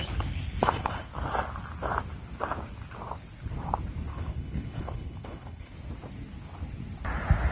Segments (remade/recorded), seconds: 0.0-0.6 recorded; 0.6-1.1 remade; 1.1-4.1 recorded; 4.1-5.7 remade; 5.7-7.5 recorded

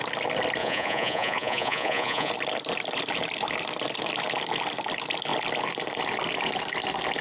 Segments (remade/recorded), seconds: 0.0-0.6 recorded; 0.6-2.3 remade; 2.3-7.2 recorded

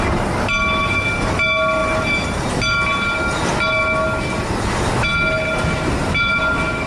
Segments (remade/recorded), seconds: 0.0-1.8 recorded; 1.8-2.5 remade; 2.5-6.9 recorded